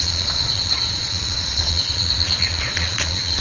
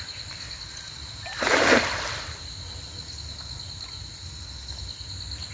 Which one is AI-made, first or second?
first